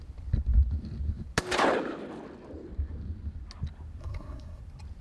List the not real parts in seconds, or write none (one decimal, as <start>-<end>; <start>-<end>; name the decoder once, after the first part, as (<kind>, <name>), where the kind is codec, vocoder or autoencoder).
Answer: 4.0-4.6 (codec, SNAC)

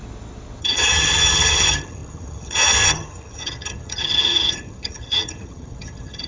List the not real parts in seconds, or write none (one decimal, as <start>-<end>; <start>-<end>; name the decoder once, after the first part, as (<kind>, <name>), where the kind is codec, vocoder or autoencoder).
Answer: 0.6-6.3 (vocoder, HiFi-GAN)

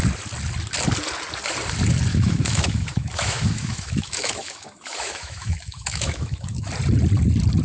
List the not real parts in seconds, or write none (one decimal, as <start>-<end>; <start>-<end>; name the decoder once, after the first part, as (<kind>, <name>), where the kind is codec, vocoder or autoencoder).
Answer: 2.1-6.7 (autoencoder, DAC-VAE)

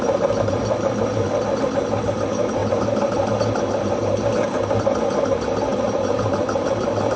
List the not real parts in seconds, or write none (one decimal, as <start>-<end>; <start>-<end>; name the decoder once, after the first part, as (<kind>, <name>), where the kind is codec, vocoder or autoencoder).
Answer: none

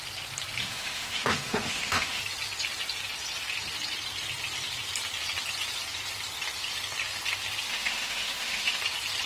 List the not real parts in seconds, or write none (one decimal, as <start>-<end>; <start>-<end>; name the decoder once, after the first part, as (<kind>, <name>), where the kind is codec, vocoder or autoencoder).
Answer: 0.6-2.2 (autoencoder, DAC-VAE); 7.7-8.8

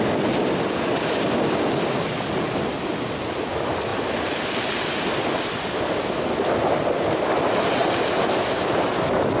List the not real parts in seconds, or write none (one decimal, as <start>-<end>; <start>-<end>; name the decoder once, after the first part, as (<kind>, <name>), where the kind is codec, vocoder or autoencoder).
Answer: none

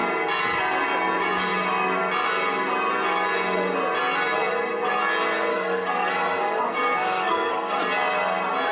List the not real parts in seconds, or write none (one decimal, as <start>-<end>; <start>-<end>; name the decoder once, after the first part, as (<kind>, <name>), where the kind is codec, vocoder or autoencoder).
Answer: 5.5-7.8 (codec, SNAC)